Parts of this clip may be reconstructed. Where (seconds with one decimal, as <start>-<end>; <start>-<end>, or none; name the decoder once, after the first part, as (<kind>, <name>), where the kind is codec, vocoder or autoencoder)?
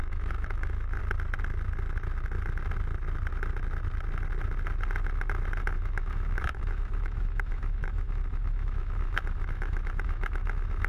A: 0.0-1.0 (autoencoder, DAC-VAE); 5.6-10.9